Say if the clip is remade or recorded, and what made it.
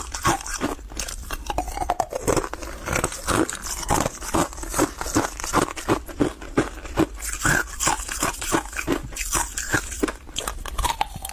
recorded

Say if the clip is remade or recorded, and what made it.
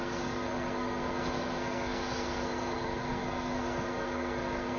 remade, codec, SNAC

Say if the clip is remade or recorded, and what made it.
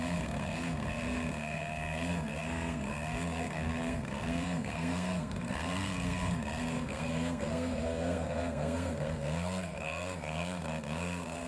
remade, codec, SNAC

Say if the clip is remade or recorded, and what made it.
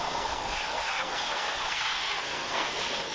remade, codec, SNAC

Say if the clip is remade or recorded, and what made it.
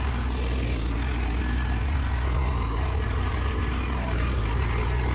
recorded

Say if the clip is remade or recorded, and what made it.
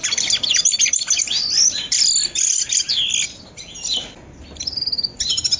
recorded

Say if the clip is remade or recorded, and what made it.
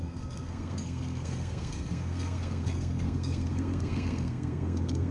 remade, codec, SNAC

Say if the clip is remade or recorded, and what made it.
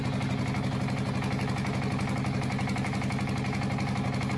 recorded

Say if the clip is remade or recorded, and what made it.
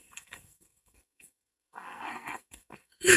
remade, codec, SNAC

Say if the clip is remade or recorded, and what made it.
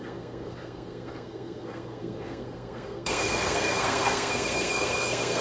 remade, codec, SNAC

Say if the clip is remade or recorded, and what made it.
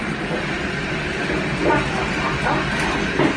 recorded